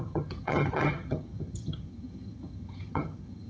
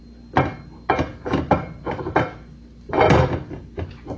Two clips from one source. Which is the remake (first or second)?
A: first